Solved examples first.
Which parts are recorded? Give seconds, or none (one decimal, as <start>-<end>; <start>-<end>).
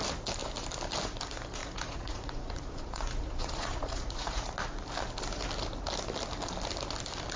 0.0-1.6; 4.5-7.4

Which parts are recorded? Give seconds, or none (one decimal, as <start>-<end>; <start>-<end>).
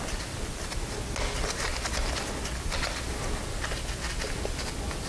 0.0-5.1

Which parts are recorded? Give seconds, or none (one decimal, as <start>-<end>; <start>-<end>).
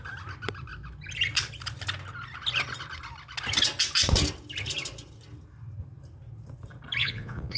0.0-7.0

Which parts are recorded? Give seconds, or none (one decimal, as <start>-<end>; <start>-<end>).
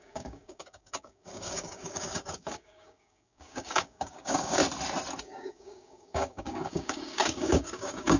4.6-5.2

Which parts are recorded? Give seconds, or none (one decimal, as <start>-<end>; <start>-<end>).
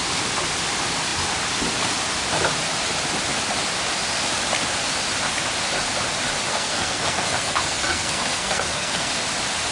0.0-6.5; 9.1-9.7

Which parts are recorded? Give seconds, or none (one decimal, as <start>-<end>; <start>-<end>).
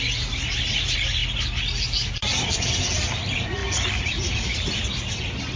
0.0-3.6; 4.8-5.6